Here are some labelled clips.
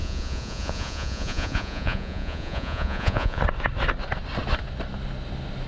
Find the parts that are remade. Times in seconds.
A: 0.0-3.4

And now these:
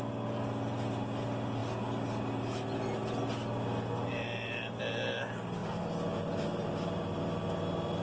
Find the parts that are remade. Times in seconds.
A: none

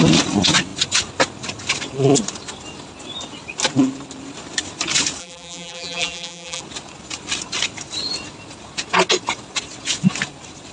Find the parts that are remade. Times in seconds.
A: 5.2-6.6

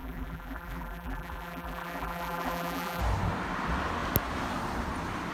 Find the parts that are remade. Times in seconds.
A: 0.0-3.0